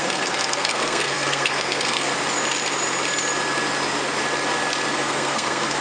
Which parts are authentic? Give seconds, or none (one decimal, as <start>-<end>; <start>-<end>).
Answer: 2.1-4.9